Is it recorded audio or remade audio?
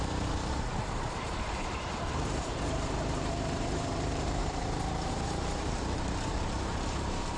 remade